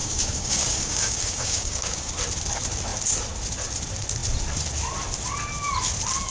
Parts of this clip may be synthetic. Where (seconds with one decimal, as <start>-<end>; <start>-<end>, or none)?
0.0-2.1